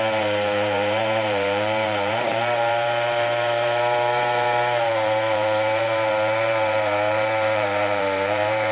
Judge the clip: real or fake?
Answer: fake